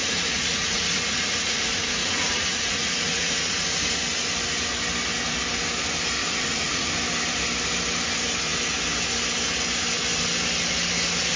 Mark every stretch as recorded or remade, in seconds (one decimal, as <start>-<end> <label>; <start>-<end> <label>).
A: 0.0-3.8 remade; 3.8-6.2 recorded; 6.2-6.9 remade; 6.9-11.4 recorded